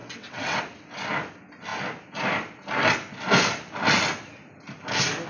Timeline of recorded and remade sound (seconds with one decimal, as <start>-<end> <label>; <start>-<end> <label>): 0.0-0.6 remade; 0.6-5.3 recorded